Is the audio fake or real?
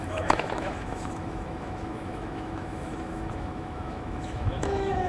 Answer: fake